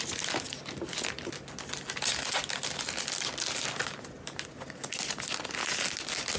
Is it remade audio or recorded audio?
recorded